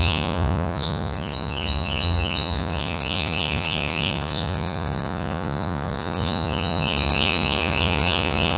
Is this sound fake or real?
fake